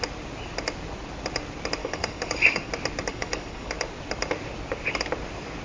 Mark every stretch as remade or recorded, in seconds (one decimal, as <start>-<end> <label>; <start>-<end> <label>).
0.0-1.8 recorded; 1.8-2.7 remade; 2.7-3.1 recorded; 3.1-3.7 remade; 3.7-5.6 recorded